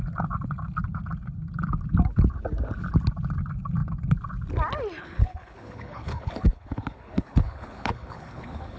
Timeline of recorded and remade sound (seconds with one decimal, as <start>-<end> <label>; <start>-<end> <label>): 0.0-5.0 recorded; 5.0-8.8 remade